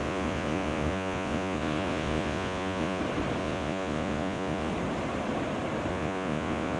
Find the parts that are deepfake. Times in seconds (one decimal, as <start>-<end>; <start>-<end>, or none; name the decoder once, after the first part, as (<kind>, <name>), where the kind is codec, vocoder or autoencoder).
0.0-3.0 (vocoder, Vocos); 3.4-4.7; 5.9-6.8